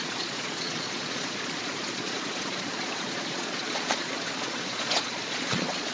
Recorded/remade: remade